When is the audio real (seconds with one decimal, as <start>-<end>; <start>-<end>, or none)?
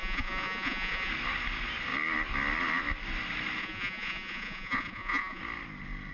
1.1-3.6; 5.4-6.1